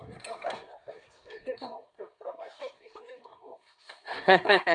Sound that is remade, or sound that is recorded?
remade